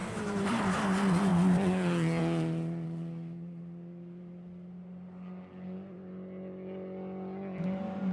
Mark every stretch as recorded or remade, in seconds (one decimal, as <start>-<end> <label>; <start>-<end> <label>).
0.0-0.6 remade; 0.6-8.1 recorded

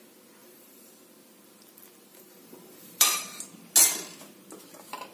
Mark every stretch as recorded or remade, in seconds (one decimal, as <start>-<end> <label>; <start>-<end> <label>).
0.0-0.4 recorded; 0.4-0.9 remade; 0.9-2.1 recorded; 2.1-3.4 remade; 3.4-5.1 recorded

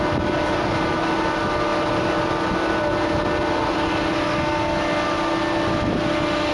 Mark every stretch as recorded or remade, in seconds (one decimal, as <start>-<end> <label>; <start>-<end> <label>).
0.0-6.5 recorded

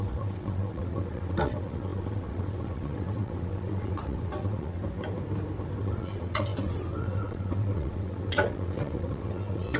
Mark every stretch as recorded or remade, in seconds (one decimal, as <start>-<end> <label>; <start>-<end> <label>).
0.0-4.8 remade; 4.8-5.8 recorded; 5.8-9.8 remade

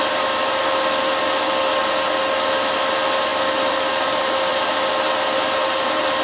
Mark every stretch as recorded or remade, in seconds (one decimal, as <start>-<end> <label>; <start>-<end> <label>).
0.0-6.2 recorded

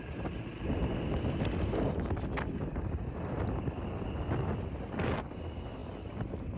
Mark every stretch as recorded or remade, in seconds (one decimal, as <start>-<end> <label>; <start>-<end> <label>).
0.0-6.6 recorded

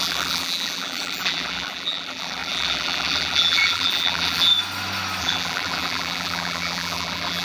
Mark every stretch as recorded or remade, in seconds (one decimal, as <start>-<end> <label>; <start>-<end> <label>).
0.0-4.5 remade; 4.5-5.2 recorded; 5.2-7.4 remade

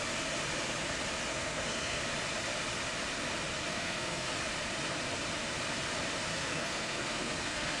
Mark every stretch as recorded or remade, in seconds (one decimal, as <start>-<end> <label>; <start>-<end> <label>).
0.0-1.3 recorded; 1.3-2.0 remade; 2.0-3.7 recorded; 3.7-4.3 remade; 4.3-6.3 recorded; 6.3-7.8 remade